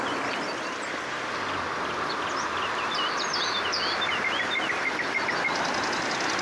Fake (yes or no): no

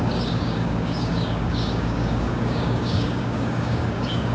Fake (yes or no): yes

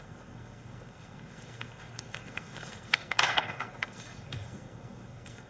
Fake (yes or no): yes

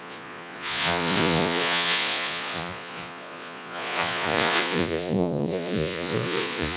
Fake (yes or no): yes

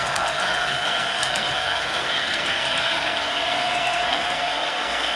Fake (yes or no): yes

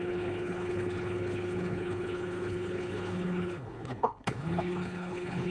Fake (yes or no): yes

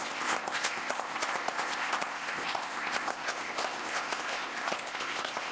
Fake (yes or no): yes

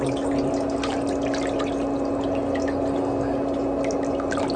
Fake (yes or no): no